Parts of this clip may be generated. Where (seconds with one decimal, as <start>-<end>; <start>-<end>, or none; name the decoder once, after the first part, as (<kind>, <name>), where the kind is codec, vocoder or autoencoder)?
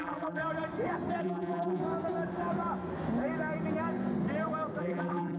0.0-0.4 (vocoder, BigVGAN v2); 1.2-1.8; 4.8-5.4